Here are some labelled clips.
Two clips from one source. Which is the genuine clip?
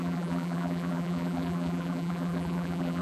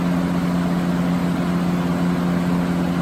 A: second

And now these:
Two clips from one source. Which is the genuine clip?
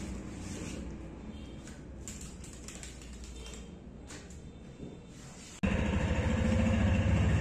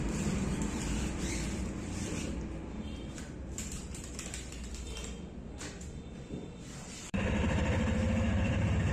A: first